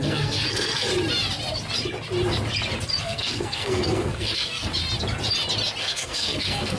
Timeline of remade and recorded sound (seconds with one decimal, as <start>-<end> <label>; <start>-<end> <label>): 0.0-0.9 remade; 0.9-3.0 recorded; 3.0-4.7 remade; 4.7-5.8 recorded; 5.8-6.8 remade